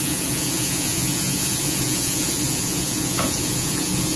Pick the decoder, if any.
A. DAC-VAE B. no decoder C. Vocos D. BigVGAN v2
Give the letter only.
C